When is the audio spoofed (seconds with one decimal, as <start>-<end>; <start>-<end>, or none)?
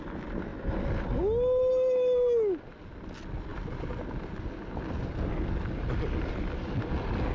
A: none